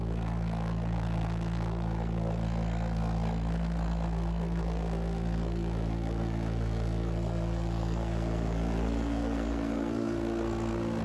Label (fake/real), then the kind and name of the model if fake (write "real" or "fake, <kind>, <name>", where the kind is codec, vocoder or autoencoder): fake, codec, SNAC